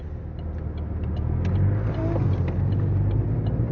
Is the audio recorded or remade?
recorded